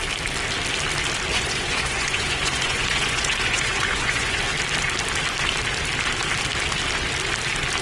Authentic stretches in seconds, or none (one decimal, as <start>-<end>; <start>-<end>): 0.0-1.3; 4.4-7.8